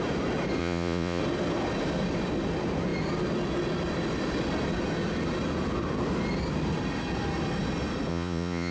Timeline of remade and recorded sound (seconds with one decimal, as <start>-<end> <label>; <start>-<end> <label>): 0.0-0.6 recorded; 0.6-1.2 remade; 1.2-8.1 recorded; 8.1-8.7 remade